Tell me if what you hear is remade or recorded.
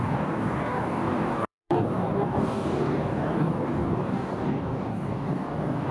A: remade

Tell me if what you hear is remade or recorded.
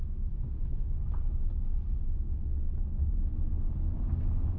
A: recorded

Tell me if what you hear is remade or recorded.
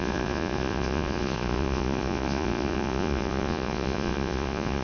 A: remade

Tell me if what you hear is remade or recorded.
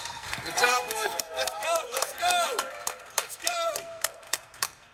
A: remade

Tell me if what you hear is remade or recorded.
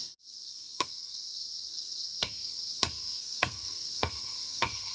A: remade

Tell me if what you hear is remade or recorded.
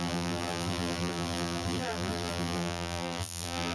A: remade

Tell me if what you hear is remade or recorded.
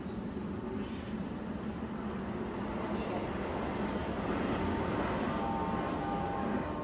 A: recorded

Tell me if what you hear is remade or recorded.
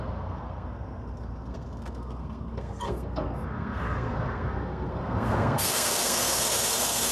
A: remade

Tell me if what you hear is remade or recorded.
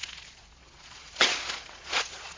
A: remade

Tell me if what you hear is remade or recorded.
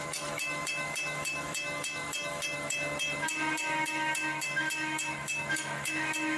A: remade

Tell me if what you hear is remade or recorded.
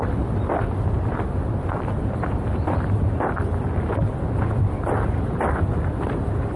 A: recorded